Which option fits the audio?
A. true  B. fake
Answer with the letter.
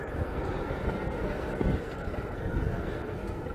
B